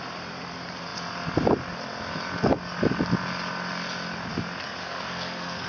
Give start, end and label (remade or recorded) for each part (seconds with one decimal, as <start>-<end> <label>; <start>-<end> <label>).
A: 0.0-4.8 recorded; 4.8-5.7 remade